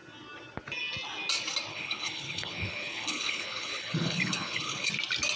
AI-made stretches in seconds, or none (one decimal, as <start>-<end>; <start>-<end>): 1.7-4.9